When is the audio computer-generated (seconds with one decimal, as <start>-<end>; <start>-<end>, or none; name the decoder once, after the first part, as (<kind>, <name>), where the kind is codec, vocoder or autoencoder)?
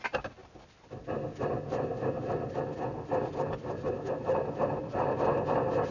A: none